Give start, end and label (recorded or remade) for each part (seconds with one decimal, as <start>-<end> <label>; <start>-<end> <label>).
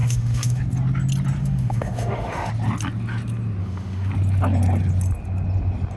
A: 0.0-0.6 remade; 0.6-1.4 recorded; 1.4-2.5 remade; 2.5-3.6 recorded; 3.6-4.1 remade; 4.1-6.0 recorded